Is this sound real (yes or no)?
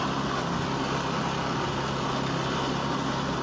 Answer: yes